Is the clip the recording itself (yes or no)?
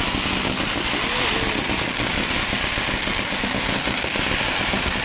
yes